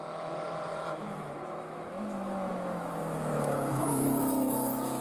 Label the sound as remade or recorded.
remade